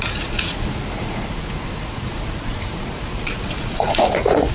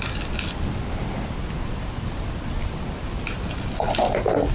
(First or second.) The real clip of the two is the second